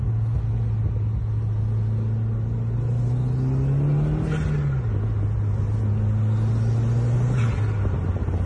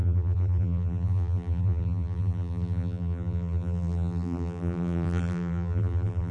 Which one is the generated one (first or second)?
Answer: second